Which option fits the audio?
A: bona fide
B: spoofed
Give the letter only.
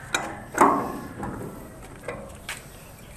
A